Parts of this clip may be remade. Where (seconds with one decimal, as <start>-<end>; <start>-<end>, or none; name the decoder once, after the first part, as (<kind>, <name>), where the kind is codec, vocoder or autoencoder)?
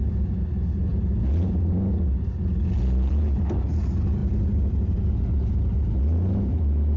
4.2-5.1 (vocoder, BigVGAN v2)